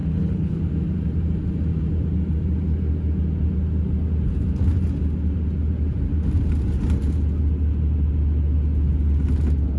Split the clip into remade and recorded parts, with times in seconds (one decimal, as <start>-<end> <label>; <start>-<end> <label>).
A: 0.0-0.6 remade; 0.6-9.8 recorded